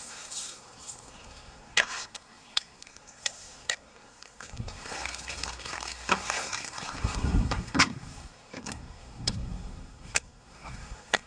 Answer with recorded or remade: remade